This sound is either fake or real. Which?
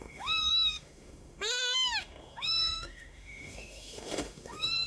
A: fake